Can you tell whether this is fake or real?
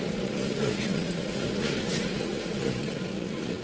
fake